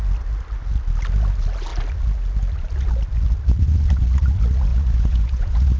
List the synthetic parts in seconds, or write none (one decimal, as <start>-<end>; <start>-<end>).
4.7-5.8